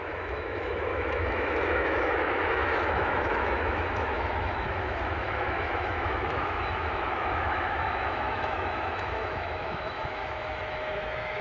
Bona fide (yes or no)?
no